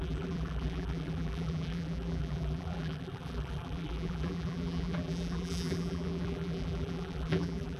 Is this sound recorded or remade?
remade